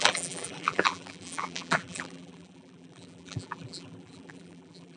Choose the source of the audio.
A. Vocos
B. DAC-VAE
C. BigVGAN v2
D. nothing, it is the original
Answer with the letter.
C